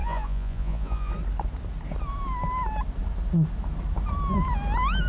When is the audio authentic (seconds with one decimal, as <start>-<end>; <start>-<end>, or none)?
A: 1.1-5.1